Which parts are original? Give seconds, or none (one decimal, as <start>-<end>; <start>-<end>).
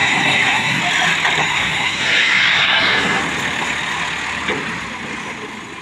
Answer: 0.8-1.4; 3.2-5.8